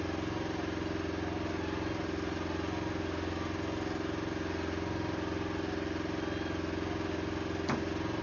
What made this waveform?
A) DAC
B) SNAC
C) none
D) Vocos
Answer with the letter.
C